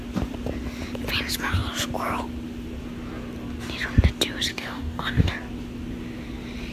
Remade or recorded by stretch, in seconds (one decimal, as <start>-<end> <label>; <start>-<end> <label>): 0.0-4.5 recorded; 4.5-5.3 remade; 5.3-6.7 recorded